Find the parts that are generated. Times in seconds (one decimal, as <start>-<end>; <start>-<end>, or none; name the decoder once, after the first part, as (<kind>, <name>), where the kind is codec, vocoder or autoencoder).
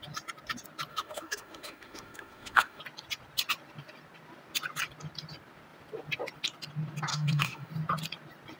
0.9-2.8 (autoencoder, DAC-VAE); 7.1-7.7